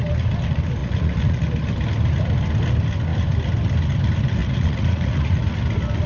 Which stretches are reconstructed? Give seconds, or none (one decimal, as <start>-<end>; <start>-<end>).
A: 0.8-1.4; 4.4-5.4